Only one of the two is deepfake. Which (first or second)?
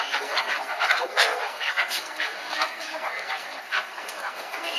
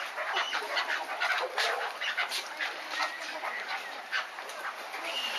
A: first